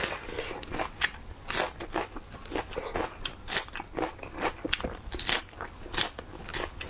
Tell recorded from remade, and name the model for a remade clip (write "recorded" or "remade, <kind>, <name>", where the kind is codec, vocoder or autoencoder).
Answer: recorded